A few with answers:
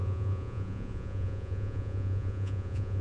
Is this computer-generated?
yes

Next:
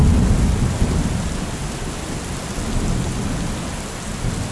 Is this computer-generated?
no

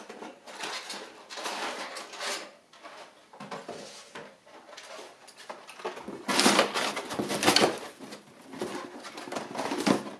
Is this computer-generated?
no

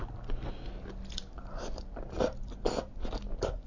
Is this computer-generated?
no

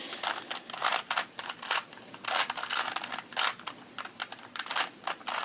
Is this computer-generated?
no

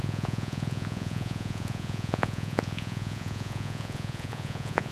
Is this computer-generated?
yes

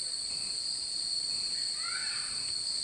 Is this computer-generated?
no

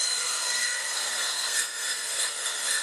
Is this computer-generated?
yes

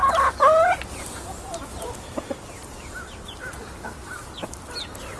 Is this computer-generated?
no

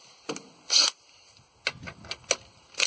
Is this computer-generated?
no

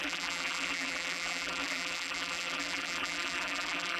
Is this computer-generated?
yes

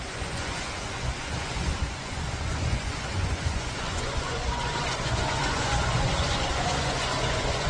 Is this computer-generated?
yes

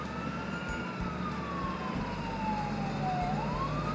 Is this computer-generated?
no